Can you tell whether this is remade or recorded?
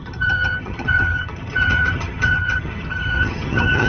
remade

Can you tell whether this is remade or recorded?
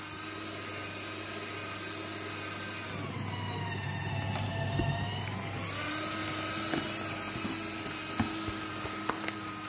recorded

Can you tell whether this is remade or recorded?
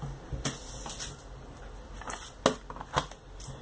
recorded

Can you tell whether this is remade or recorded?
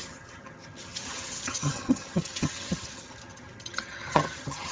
remade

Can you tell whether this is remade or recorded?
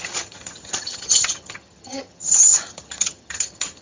remade